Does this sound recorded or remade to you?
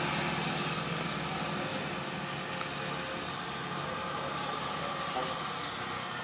recorded